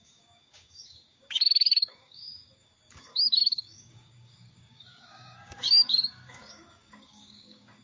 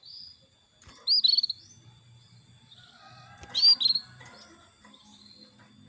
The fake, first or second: first